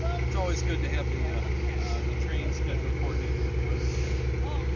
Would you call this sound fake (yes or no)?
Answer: no